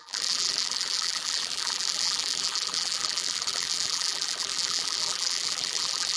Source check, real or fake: fake